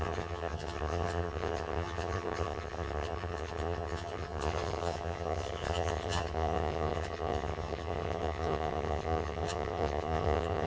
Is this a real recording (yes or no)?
no